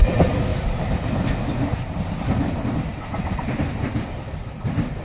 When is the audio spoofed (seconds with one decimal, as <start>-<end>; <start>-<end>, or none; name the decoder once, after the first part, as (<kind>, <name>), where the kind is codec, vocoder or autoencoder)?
0.5-1.7 (vocoder, BigVGAN v2)